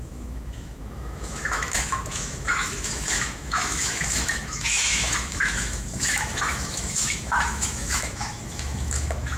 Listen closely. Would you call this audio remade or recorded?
remade